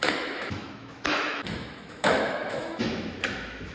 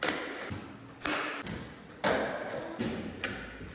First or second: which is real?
second